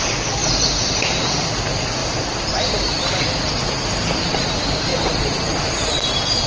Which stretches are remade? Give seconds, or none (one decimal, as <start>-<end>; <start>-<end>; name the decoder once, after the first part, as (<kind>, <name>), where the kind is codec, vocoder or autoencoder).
2.0-2.8 (vocoder, BigVGAN v2); 4.9-6.1